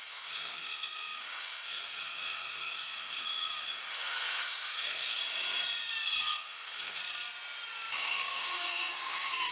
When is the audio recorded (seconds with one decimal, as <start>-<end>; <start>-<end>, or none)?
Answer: 5.2-6.2; 7.0-7.9